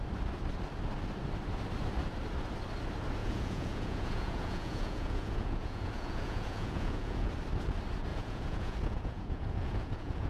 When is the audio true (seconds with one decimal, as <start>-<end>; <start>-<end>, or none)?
0.0-3.2; 7.3-8.1